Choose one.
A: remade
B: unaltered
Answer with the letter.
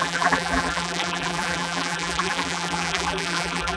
A